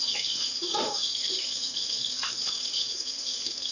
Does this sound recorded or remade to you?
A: remade